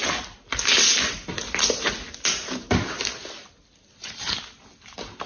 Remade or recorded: recorded